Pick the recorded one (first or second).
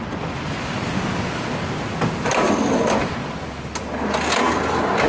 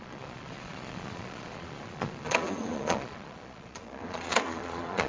first